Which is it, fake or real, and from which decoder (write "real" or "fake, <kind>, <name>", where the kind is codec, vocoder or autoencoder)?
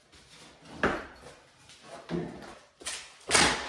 real